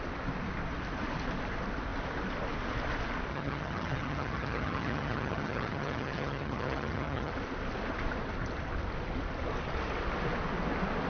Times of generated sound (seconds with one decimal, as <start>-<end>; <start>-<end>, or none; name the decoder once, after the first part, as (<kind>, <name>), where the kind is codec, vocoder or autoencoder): 3.3-7.3 (vocoder, HiFi-GAN)